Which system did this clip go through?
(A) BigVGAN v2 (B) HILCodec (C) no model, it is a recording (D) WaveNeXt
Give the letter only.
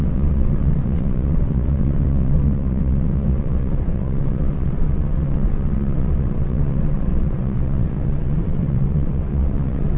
D